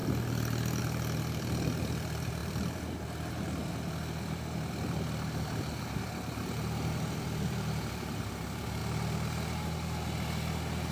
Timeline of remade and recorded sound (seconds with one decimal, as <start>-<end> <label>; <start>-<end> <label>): 0.0-0.8 recorded; 0.8-8.8 remade; 8.8-10.9 recorded